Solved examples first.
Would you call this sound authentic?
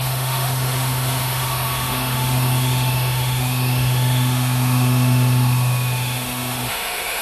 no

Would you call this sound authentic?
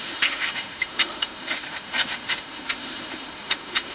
no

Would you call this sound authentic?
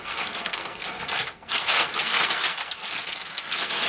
no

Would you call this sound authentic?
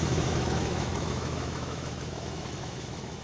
no